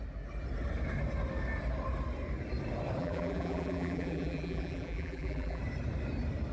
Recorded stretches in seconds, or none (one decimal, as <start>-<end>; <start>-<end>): 0.0-3.0; 5.6-6.5